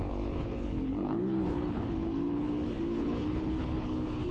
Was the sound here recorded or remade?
remade